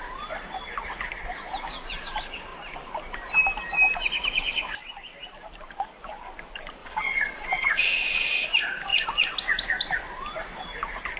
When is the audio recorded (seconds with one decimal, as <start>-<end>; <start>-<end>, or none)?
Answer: 0.0-6.8; 8.1-11.2